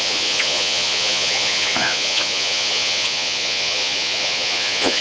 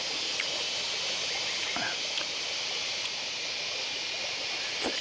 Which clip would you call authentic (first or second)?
second